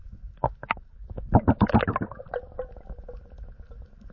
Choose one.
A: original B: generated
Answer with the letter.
A